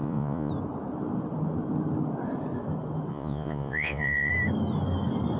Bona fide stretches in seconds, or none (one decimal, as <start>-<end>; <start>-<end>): 0.5-3.1; 4.3-5.4